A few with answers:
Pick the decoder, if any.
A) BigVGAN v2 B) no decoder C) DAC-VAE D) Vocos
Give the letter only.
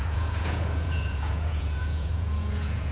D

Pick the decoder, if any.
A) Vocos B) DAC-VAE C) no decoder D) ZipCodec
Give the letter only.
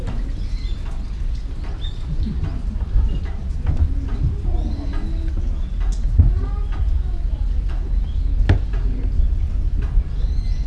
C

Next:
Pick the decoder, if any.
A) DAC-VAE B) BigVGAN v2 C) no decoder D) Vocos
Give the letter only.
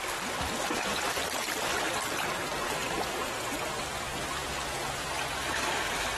C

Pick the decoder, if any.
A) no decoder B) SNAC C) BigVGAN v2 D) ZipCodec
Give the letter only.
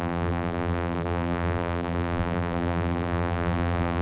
C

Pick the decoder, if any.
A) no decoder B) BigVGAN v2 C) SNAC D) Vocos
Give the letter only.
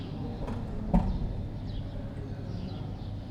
A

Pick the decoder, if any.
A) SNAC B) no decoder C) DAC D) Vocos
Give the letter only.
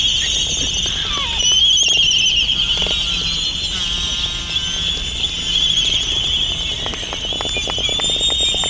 B